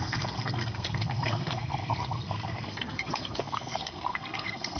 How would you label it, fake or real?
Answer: fake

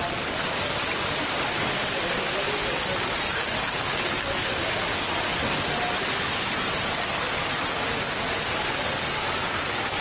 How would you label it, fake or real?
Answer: real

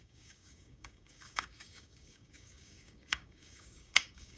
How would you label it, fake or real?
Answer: fake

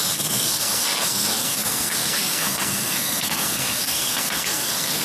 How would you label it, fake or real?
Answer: fake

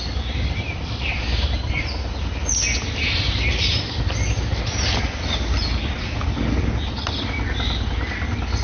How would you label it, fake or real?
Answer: real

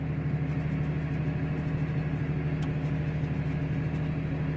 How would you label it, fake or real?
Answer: real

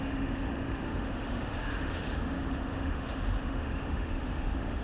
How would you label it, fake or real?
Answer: fake